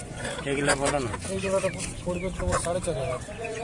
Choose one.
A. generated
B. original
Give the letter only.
A